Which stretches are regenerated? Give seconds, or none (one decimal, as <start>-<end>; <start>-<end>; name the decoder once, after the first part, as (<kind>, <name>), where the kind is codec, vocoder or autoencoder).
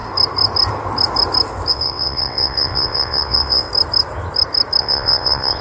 1.7-3.7 (vocoder, WaveNeXt); 4.8-5.6